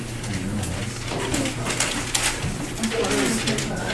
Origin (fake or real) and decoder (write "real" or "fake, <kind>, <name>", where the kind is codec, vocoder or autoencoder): real